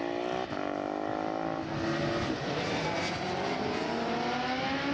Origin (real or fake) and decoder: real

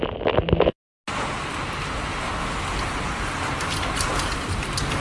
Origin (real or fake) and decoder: real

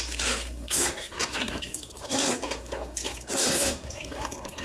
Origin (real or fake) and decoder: fake, codec, SNAC